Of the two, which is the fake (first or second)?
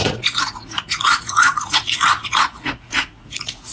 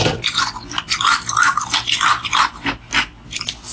first